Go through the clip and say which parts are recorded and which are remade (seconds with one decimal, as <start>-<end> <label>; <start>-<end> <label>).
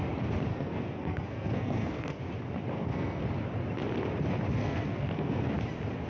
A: 0.0-0.5 recorded; 0.5-2.2 remade; 2.2-2.7 recorded; 2.7-3.2 remade; 3.2-4.6 recorded; 4.6-5.5 remade; 5.5-6.1 recorded